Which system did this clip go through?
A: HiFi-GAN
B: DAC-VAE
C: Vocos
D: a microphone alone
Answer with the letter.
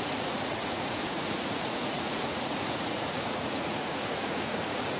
C